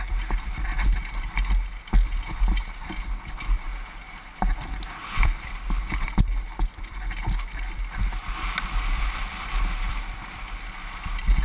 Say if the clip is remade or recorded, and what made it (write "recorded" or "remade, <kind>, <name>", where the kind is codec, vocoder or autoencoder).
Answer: recorded